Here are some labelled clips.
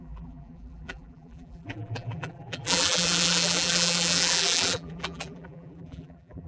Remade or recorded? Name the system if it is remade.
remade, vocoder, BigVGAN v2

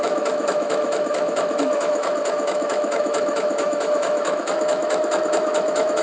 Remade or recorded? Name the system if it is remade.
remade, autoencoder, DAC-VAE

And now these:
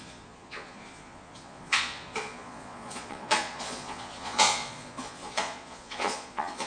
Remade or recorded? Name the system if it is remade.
remade, vocoder, Vocos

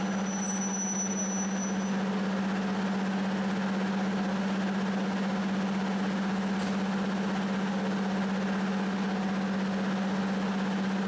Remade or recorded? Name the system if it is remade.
recorded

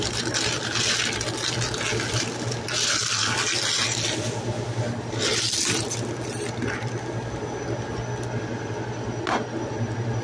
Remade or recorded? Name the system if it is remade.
recorded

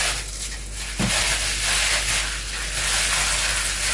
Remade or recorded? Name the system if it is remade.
recorded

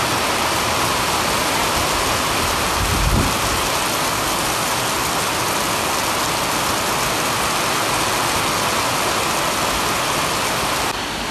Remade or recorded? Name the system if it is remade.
recorded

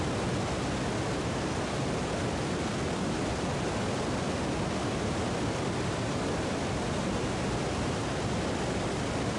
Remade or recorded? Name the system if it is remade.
recorded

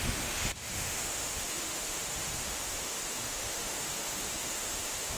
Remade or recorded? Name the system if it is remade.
remade, autoencoder, DAC-VAE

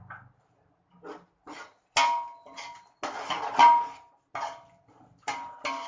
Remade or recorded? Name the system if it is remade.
recorded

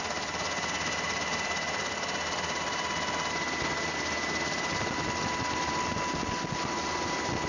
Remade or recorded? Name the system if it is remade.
recorded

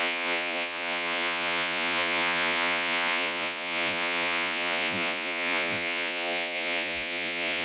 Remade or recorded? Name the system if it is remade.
remade, vocoder, Vocos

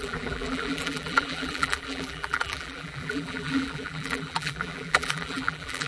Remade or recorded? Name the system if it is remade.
remade, vocoder, BigVGAN v2